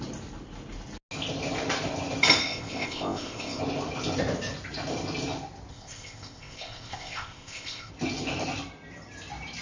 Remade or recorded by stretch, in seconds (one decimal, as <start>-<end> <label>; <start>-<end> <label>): 0.0-2.4 recorded; 2.4-3.6 remade; 3.6-5.7 recorded; 5.7-7.9 remade; 7.9-9.6 recorded